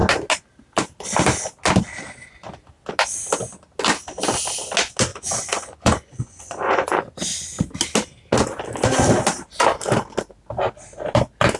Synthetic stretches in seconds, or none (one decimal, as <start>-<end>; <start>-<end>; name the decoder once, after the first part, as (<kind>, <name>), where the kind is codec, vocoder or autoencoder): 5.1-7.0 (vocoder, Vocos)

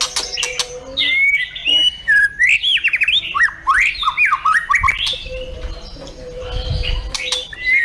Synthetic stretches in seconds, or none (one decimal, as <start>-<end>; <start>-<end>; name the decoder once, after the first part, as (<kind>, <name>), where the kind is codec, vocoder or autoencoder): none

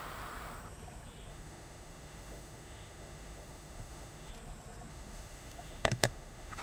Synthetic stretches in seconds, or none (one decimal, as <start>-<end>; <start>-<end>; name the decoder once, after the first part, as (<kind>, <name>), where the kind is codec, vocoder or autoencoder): 1.3-4.3 (autoencoder, DAC-VAE); 4.9-6.6

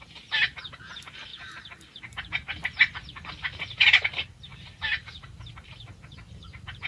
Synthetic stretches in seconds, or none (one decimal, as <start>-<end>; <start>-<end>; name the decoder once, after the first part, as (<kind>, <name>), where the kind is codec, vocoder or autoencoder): 1.3-2.0 (vocoder, BigVGAN v2); 4.5-6.9